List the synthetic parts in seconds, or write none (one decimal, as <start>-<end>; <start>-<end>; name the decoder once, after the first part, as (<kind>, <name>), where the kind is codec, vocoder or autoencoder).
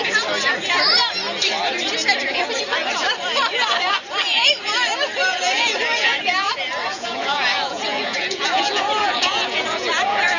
5.3-10.4 (vocoder, Vocos)